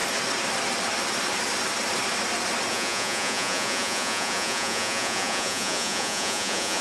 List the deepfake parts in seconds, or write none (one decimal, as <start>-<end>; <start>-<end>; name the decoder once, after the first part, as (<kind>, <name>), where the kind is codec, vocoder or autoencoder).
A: 2.7-6.8 (vocoder, Vocos)